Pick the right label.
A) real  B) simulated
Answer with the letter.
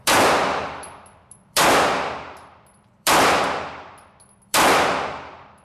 B